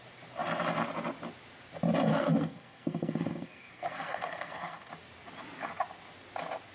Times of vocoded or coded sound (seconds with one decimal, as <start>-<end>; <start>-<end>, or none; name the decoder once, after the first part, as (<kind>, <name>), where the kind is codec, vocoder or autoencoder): 2.1-4.9 (codec, SNAC)